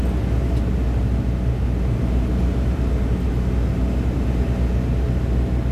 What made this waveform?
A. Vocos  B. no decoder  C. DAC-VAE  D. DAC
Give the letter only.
B